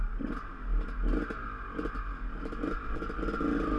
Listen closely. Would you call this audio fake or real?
real